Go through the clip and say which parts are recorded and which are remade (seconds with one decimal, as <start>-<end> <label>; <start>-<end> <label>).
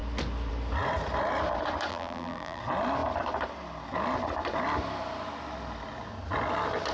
0.0-1.9 recorded; 1.9-2.6 remade; 2.6-6.9 recorded